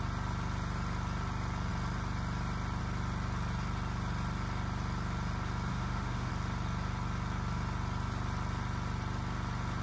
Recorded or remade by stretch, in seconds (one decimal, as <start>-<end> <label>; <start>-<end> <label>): 0.0-5.7 recorded; 5.7-6.3 remade; 6.3-9.8 recorded